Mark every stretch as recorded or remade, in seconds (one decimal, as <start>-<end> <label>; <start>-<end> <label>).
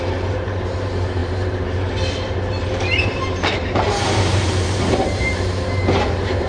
0.0-6.5 remade